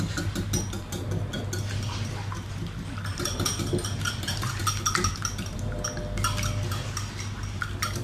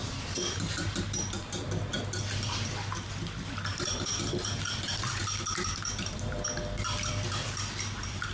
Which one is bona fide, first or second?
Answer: first